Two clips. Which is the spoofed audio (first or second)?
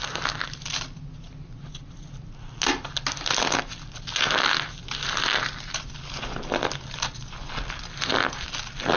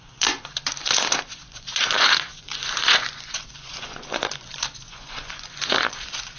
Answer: second